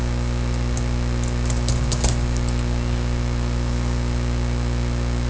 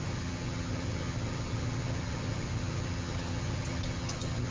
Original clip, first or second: first